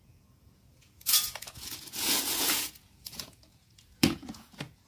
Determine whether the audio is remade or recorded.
remade